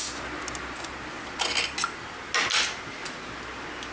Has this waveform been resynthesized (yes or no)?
no